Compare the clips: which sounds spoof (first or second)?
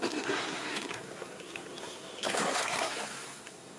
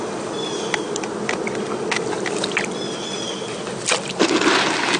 first